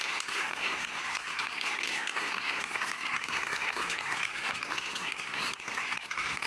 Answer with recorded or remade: remade